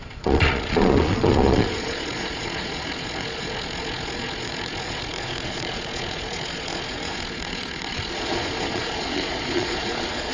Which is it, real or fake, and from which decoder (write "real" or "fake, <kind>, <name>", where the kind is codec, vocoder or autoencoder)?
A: fake, vocoder, Vocos